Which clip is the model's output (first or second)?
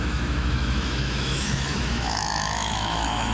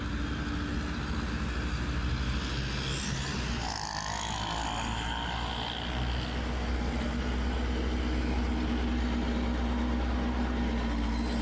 first